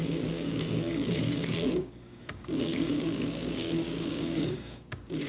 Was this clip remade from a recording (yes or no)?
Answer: yes